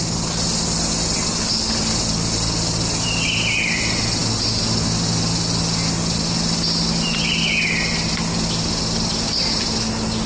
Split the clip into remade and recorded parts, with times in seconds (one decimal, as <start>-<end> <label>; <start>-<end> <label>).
0.0-10.3 remade